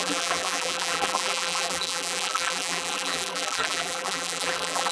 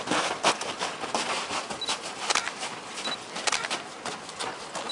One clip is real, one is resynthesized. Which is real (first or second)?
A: second